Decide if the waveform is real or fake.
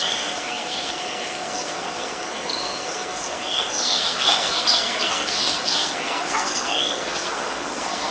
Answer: fake